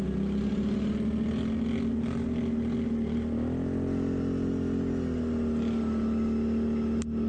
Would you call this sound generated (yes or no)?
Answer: no